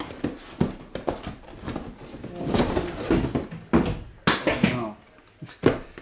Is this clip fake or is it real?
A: real